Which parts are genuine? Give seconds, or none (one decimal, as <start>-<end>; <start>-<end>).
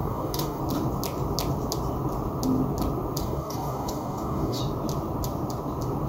0.6-3.2; 4.6-6.1